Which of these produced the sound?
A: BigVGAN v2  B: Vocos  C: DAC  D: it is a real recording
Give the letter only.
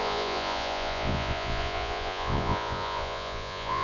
B